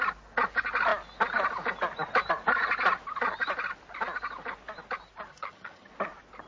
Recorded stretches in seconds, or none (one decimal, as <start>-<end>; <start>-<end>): 0.0-5.3; 5.9-6.5